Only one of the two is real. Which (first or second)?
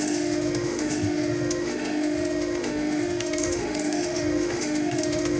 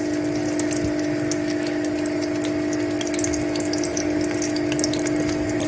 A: second